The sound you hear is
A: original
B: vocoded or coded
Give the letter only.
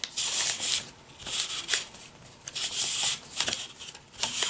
A